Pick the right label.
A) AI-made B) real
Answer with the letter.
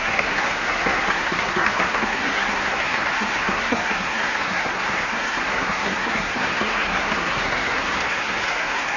A